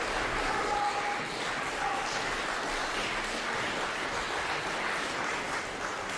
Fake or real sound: real